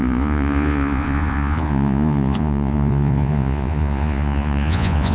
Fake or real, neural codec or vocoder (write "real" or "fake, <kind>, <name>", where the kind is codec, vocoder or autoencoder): fake, vocoder, Vocos